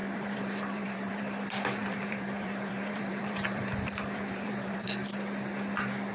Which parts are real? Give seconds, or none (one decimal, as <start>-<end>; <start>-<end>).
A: 1.2-1.8; 4.9-6.1